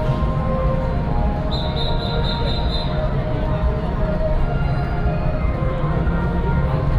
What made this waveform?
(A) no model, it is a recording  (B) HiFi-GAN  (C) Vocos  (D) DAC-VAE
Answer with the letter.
A